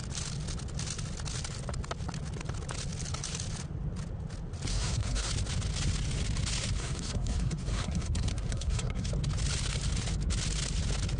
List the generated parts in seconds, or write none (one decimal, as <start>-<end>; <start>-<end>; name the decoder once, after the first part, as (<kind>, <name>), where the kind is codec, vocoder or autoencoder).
4.7-5.3 (codec, SNAC); 6.8-9.1